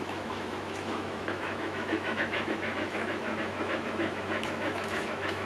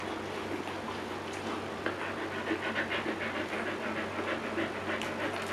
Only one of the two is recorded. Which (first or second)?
second